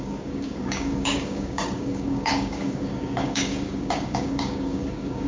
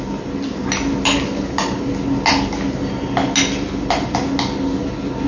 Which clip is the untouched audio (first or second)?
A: second